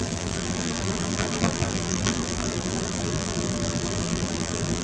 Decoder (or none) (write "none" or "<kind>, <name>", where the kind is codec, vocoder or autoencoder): vocoder, BigVGAN v2